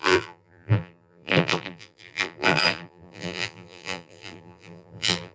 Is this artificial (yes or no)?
yes